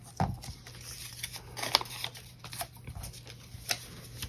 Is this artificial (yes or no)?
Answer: no